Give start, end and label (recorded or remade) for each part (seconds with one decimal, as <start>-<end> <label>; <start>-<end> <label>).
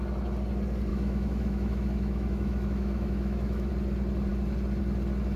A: 0.0-0.9 recorded; 0.9-3.7 remade; 3.7-5.4 recorded